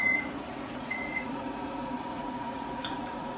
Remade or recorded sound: remade